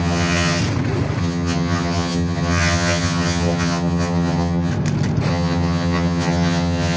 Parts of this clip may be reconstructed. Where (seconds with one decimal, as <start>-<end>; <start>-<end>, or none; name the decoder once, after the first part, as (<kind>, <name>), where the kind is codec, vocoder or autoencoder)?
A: 0.0-0.6 (vocoder, HiFi-GAN); 1.2-4.7; 5.3-7.0